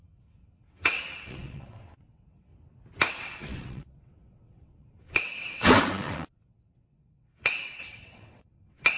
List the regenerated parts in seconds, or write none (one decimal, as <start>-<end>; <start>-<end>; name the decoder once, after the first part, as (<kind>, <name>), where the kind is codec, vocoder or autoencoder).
0.0-2.5 (vocoder, WaveNeXt); 3.1-9.0

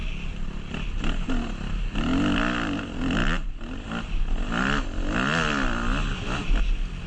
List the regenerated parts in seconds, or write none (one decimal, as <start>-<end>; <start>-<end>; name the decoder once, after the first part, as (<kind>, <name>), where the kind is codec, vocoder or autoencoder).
none